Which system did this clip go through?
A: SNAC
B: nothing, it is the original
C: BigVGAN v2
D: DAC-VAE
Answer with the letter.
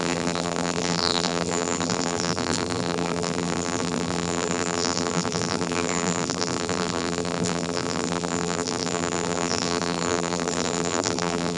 C